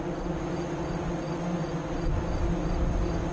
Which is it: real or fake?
real